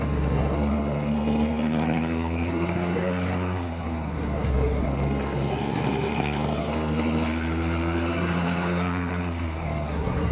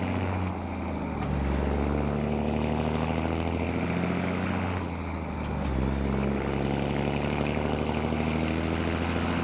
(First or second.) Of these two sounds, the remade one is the first